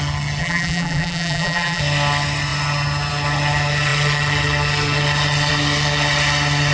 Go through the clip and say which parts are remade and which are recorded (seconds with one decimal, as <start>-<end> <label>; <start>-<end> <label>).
0.0-0.4 recorded; 0.4-1.8 remade; 1.8-6.7 recorded